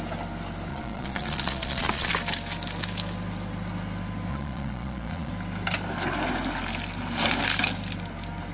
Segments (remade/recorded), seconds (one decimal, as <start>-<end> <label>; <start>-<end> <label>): 0.0-0.7 recorded; 0.7-2.1 remade; 2.1-4.3 recorded; 4.3-5.3 remade; 5.3-8.5 recorded